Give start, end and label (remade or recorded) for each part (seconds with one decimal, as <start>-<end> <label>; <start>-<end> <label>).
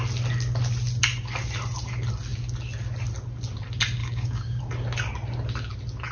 0.0-4.0 recorded; 4.0-4.6 remade; 4.6-6.1 recorded